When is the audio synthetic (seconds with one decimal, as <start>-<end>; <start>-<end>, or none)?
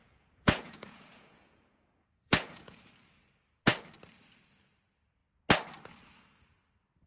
0.0-2.9